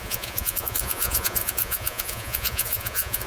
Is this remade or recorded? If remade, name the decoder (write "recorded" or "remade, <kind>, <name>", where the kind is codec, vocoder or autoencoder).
remade, vocoder, Vocos